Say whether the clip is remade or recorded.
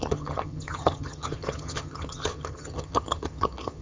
remade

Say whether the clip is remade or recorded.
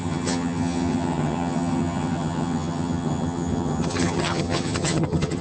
remade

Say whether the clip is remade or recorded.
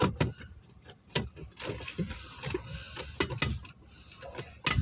recorded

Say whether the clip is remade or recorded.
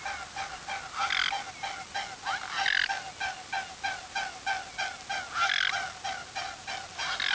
recorded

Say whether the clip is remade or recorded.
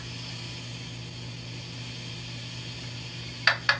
recorded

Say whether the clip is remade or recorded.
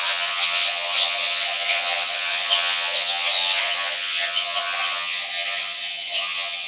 remade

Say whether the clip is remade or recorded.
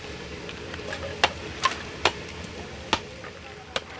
recorded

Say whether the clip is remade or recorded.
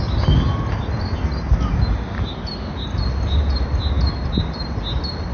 recorded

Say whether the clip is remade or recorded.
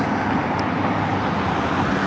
recorded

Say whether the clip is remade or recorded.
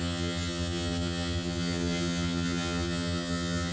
remade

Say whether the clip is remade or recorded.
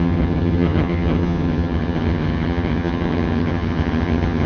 remade